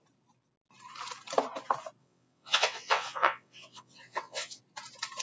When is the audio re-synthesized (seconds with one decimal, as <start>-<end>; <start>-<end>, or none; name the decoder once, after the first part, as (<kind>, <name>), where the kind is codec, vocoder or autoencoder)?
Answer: 2.0-4.6 (vocoder, WaveNeXt)